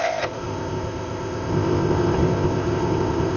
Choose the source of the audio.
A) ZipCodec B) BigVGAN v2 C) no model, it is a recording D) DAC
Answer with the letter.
A